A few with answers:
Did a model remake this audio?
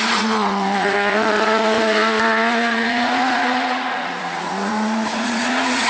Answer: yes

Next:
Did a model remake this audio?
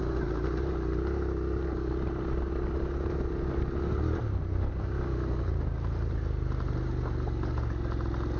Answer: no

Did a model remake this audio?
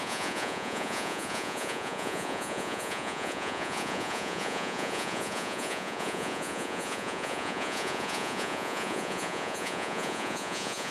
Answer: yes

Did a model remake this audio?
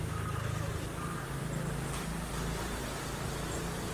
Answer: no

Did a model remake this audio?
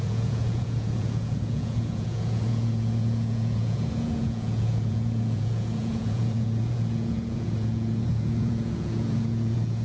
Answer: yes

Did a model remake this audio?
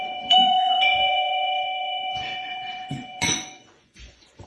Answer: yes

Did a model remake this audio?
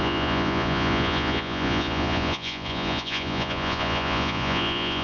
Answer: yes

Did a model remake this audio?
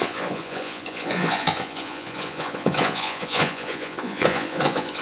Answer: yes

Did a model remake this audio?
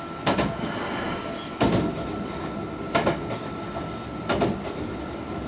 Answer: no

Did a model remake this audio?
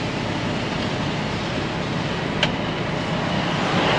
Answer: no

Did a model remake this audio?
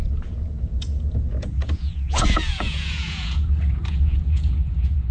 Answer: yes